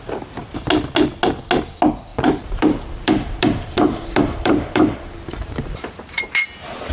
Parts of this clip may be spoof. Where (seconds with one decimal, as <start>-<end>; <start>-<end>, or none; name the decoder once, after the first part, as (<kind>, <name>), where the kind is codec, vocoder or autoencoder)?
2.1-6.2 (vocoder, BigVGAN v2)